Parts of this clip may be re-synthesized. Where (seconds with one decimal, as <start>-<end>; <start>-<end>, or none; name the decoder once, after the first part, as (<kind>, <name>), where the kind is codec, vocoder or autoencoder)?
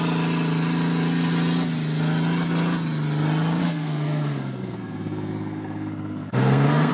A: 3.6-6.9 (codec, SNAC)